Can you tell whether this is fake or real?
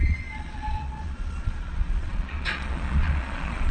fake